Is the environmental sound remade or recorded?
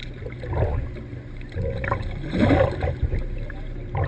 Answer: recorded